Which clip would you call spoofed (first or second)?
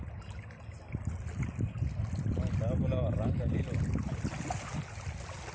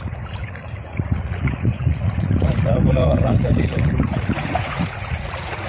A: second